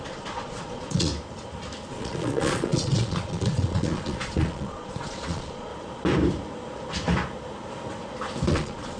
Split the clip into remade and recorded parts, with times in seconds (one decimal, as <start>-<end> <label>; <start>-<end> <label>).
0.0-1.1 remade; 1.1-1.9 recorded; 1.9-5.7 remade; 5.7-8.5 recorded; 8.5-9.0 remade